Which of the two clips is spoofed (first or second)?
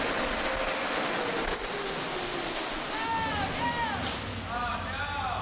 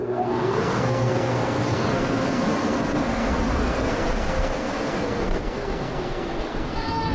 second